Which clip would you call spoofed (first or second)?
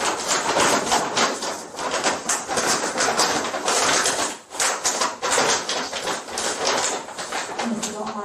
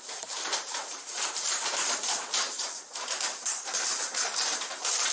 second